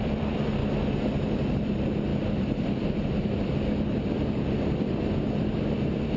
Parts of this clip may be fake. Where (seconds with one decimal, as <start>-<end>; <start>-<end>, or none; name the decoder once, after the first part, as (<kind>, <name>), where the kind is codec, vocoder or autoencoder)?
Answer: 0.0-0.6 (vocoder, BigVGAN v2); 1.4-6.2